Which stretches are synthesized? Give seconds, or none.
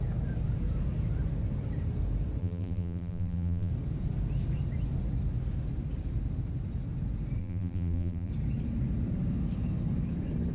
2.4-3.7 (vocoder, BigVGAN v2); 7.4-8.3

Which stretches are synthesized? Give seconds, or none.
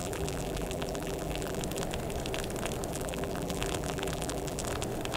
0.0-1.6 (vocoder, BigVGAN v2); 2.9-4.6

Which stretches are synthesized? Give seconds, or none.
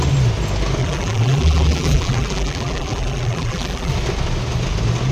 0.8-3.9 (vocoder, BigVGAN v2)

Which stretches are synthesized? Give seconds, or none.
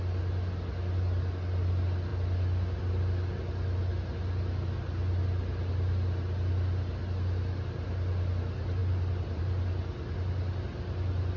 8.8-9.4 (vocoder, BigVGAN v2)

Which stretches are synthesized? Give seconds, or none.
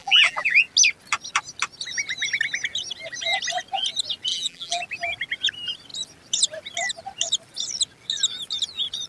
0.0-0.6 (vocoder, BigVGAN v2); 4.3-4.8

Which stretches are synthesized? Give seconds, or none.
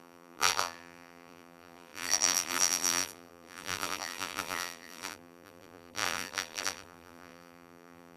0.0-8.2 (vocoder, BigVGAN v2)